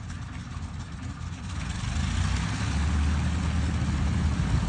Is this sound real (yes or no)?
yes